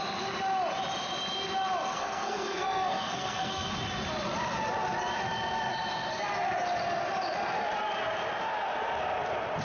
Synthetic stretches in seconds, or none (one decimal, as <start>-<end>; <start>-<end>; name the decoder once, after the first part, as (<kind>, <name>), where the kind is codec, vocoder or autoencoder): 1.9-3.7 (codec, SNAC)